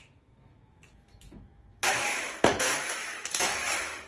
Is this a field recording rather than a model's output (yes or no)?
no